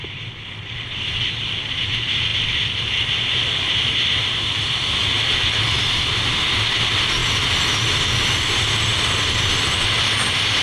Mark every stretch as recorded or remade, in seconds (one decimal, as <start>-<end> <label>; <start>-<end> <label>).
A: 0.0-10.6 recorded